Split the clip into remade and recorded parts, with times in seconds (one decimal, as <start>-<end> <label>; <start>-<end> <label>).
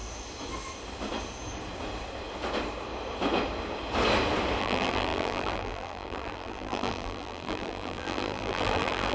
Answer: 0.0-4.6 recorded; 4.6-9.1 remade